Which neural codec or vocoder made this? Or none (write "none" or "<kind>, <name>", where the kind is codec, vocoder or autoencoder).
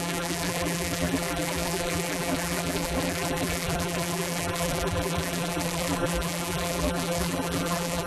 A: vocoder, BigVGAN v2